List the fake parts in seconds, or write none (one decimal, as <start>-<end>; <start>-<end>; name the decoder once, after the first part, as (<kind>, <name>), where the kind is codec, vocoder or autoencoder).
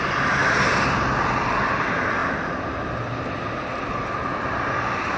none